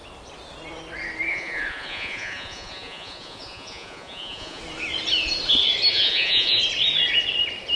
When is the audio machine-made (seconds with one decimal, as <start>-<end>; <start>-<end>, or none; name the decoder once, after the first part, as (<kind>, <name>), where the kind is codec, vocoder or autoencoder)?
1.3-4.6 (vocoder, Vocos); 5.9-6.6